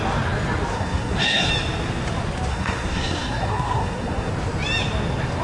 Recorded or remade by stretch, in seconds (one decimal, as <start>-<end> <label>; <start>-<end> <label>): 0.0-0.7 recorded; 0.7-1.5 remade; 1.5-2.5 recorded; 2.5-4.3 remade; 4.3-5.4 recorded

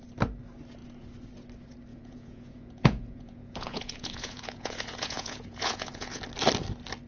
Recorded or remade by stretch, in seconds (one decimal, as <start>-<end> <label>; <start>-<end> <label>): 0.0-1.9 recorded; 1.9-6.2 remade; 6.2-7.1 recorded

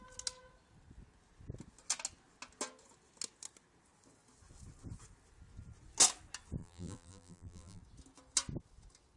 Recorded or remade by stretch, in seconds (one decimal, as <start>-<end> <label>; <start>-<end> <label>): 0.0-6.6 recorded; 6.6-7.8 remade; 7.8-9.2 recorded

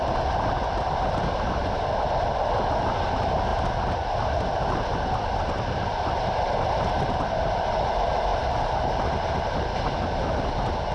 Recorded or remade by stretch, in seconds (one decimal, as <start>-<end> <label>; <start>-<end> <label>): 0.0-10.9 recorded

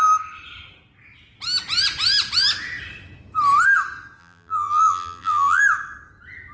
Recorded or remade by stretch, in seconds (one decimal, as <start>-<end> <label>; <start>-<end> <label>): 0.0-4.2 recorded; 4.2-5.6 remade; 5.6-6.5 recorded